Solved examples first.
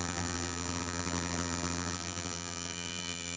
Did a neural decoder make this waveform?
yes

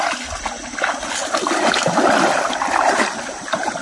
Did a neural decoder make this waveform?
no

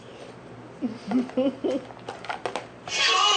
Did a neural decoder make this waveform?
no